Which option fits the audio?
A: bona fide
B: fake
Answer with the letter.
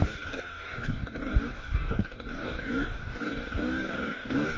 B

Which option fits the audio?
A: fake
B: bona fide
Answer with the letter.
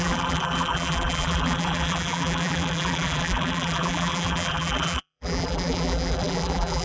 A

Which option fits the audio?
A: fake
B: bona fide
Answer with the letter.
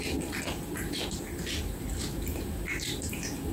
A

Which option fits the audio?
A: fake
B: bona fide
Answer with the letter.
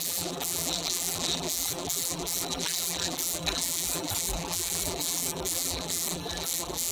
A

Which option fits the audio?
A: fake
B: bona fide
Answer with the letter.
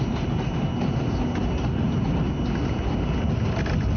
B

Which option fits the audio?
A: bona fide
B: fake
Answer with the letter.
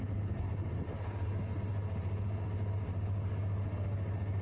A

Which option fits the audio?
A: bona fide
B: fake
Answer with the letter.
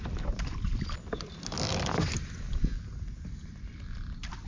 A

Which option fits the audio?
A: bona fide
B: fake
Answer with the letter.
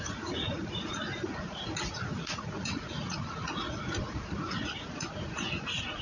B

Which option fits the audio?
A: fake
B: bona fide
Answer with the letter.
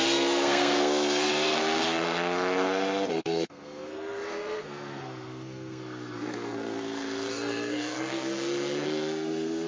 A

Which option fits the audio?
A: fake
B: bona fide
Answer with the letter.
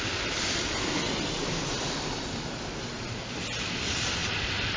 B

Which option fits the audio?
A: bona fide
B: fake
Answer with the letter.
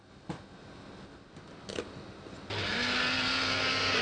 A